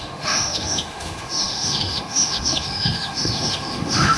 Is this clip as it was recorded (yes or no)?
no